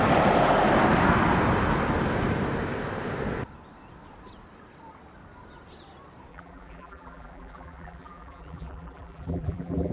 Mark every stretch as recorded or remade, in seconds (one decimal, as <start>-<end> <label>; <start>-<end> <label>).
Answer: 0.0-6.3 recorded; 6.3-9.9 remade